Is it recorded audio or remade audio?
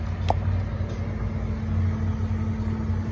recorded